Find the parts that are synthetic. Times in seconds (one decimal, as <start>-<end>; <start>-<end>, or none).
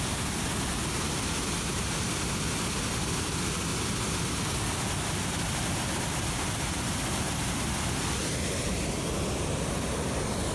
none